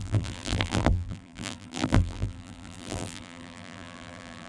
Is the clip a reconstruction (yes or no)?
yes